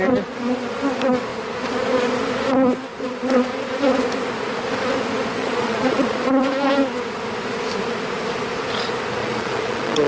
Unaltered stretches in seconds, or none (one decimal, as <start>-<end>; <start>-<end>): 0.0-5.4; 6.4-9.2